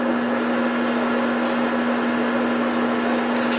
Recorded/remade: recorded